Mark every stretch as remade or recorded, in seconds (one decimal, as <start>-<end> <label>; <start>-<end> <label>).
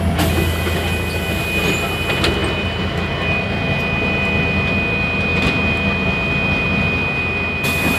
0.0-8.0 recorded